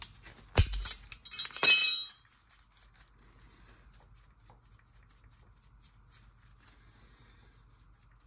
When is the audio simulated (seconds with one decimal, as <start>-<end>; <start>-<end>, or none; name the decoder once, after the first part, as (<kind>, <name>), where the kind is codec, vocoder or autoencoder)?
0.6-1.1 (vocoder, BigVGAN v2); 1.8-2.5